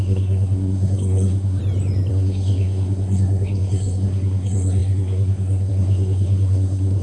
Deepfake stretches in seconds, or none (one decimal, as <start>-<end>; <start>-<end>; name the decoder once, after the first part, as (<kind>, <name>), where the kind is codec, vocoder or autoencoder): 0.0-1.6 (codec, SNAC); 2.1-7.0